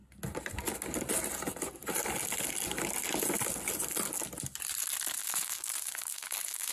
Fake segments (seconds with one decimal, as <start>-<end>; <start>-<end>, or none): 5.2-6.7